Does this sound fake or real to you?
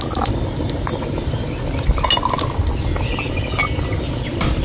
real